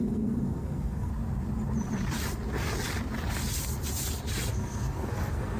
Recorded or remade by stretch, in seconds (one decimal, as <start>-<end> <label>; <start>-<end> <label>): 0.0-1.1 remade; 1.1-4.5 recorded; 4.5-5.6 remade